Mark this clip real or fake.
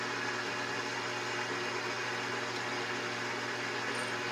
real